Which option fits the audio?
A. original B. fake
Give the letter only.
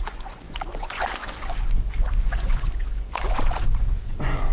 B